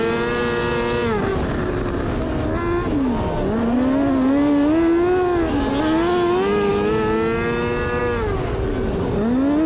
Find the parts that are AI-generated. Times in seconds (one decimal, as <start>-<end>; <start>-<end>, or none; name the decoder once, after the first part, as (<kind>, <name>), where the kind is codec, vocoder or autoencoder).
none